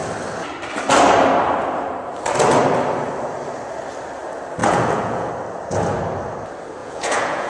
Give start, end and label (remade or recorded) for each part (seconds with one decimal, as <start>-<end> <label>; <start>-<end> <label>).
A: 0.0-4.6 recorded; 4.6-5.3 remade; 5.3-6.8 recorded; 6.8-7.5 remade